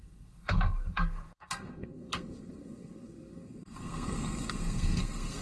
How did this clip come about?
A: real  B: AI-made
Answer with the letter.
B